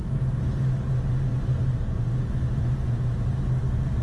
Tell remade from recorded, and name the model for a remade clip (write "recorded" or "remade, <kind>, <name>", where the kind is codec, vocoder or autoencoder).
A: recorded